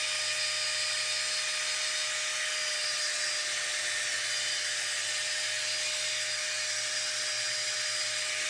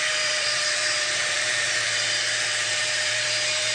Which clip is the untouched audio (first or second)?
first